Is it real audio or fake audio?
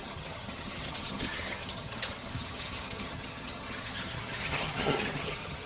fake